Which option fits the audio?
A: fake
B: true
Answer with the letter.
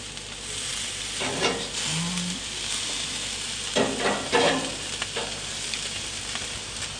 B